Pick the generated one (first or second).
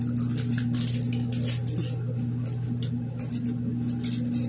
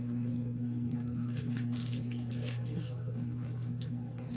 second